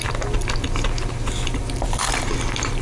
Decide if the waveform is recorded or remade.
recorded